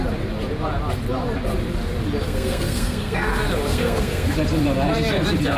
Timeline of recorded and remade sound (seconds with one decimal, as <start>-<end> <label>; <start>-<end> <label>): 0.0-2.2 recorded; 2.2-3.3 remade; 3.3-3.7 recorded; 3.7-4.3 remade; 4.3-5.6 recorded